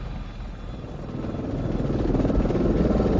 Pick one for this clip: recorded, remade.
recorded